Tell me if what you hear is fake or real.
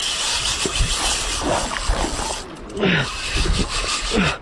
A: real